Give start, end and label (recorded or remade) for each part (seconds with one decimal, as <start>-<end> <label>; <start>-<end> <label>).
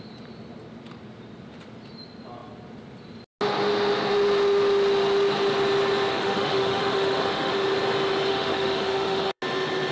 0.0-6.1 recorded; 6.1-7.5 remade; 7.5-8.3 recorded; 8.3-9.4 remade; 9.4-9.9 recorded